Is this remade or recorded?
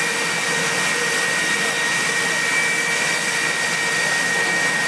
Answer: recorded